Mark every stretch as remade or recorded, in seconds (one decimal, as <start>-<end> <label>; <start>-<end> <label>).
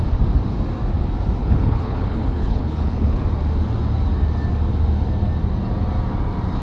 0.0-1.4 recorded; 1.4-3.2 remade; 3.2-6.6 recorded